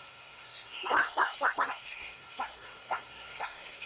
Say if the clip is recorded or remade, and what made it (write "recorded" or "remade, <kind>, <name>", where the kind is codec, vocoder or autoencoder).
remade, codec, SNAC